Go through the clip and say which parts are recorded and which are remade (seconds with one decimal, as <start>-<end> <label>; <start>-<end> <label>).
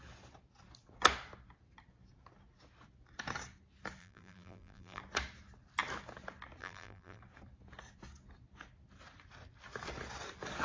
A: 0.0-4.0 recorded; 4.0-5.0 remade; 5.0-6.6 recorded; 6.6-7.2 remade; 7.2-10.6 recorded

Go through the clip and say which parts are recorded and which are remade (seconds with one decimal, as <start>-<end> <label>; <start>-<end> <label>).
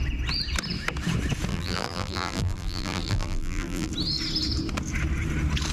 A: 0.0-1.5 recorded; 1.5-3.9 remade; 3.9-5.7 recorded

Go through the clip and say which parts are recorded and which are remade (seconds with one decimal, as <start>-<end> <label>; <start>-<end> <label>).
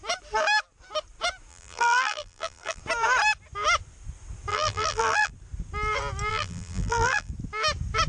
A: 0.0-1.5 recorded; 1.5-2.8 remade; 2.8-4.5 recorded; 4.5-5.3 remade; 5.3-6.3 recorded; 6.3-7.3 remade; 7.3-8.1 recorded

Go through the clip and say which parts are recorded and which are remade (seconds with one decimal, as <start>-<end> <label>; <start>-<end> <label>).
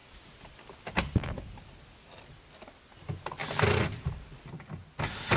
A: 0.0-2.1 remade; 2.1-3.4 recorded; 3.4-4.4 remade; 4.4-5.4 recorded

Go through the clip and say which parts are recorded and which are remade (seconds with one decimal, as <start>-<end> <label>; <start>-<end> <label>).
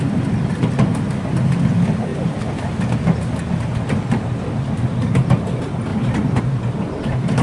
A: 0.0-2.1 recorded; 2.1-2.8 remade; 2.8-5.9 recorded; 5.9-6.4 remade; 6.4-7.4 recorded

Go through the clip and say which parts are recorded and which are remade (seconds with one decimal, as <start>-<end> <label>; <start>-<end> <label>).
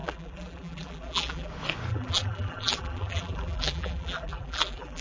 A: 0.0-1.5 remade; 1.5-1.9 recorded; 1.9-5.0 remade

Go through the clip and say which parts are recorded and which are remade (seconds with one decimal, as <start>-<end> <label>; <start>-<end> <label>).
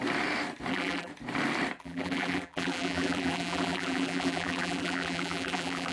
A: 0.0-0.7 recorded; 0.7-1.1 remade; 1.1-1.8 recorded; 1.8-5.9 remade